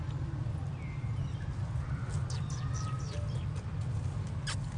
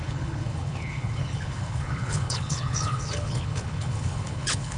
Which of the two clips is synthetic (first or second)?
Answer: second